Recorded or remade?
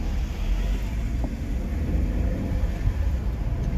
recorded